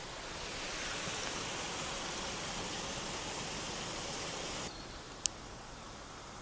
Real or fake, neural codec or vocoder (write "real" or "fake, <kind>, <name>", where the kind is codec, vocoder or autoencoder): real